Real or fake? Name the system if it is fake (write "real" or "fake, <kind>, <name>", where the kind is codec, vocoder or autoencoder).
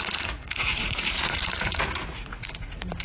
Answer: fake, vocoder, Vocos